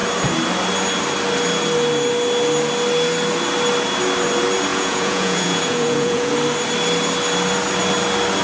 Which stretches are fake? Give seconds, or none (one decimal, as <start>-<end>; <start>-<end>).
4.7-6.3